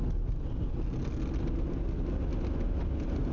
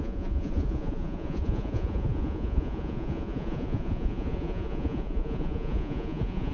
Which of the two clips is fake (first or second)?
second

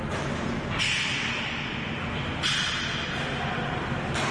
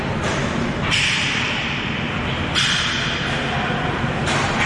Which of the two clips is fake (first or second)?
second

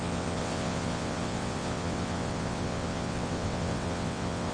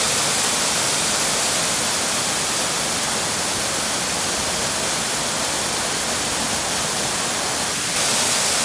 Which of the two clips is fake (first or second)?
first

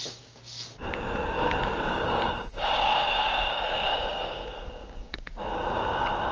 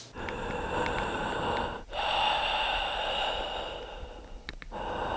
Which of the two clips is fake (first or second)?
first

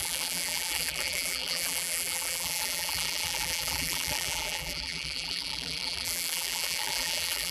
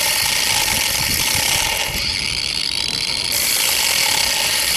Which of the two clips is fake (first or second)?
first